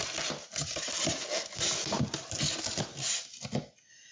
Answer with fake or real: real